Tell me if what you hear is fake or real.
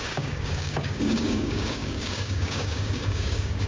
fake